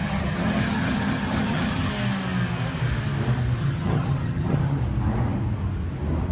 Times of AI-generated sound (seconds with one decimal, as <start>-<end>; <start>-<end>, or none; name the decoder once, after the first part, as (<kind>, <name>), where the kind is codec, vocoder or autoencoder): 0.0-1.9 (vocoder, HiFi-GAN); 3.6-4.8